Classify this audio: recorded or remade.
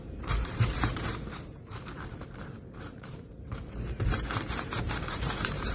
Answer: remade